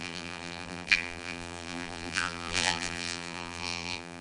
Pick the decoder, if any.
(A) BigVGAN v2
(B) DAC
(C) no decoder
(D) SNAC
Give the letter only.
A